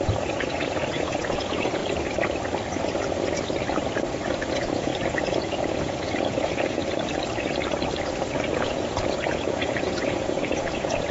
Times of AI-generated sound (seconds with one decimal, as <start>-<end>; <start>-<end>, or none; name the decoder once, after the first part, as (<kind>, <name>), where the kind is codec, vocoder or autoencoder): 0.0-1.8 (vocoder, Vocos); 4.2-4.9; 5.4-6.8; 8.5-11.1